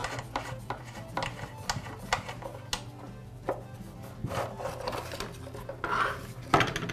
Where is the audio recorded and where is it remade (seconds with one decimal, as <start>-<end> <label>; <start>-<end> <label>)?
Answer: 0.0-6.9 recorded